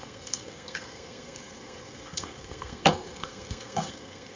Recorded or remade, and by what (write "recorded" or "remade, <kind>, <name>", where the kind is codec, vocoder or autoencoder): remade, codec, SNAC